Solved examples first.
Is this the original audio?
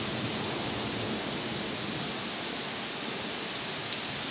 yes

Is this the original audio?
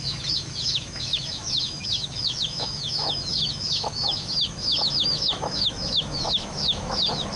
no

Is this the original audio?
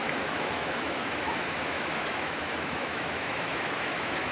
no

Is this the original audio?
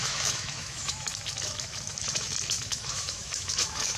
no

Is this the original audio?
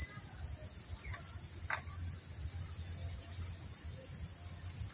yes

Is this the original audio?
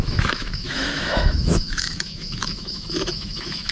no